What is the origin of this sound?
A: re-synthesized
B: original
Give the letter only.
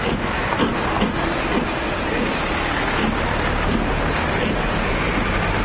B